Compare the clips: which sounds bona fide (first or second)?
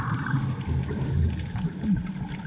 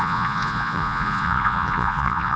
first